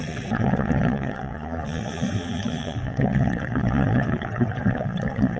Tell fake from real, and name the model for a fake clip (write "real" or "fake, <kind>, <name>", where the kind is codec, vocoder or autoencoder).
fake, vocoder, WaveNeXt